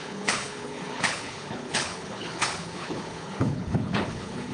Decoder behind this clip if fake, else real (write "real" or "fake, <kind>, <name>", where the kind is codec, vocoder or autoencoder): fake, codec, HILCodec